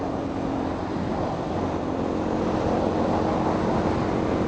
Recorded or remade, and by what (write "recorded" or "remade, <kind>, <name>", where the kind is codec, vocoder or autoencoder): recorded